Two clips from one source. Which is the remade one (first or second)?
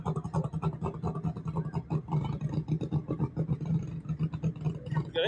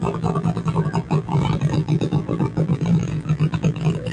second